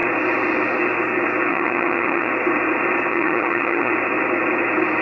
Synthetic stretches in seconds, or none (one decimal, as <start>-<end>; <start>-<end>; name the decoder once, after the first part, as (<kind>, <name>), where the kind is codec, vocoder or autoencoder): 1.5-2.3 (vocoder, HiFi-GAN); 3.1-3.9